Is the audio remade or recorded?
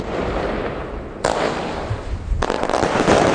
remade